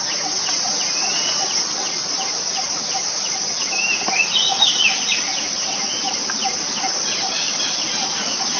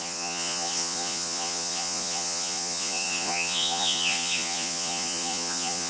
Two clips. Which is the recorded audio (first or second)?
first